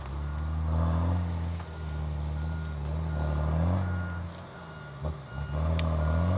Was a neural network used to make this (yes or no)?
no